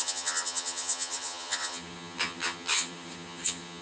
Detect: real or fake fake